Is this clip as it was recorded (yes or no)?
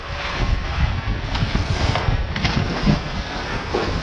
no